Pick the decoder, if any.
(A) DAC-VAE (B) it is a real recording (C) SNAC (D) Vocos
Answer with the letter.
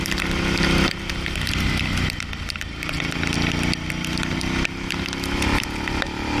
B